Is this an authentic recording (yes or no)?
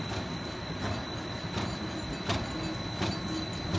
yes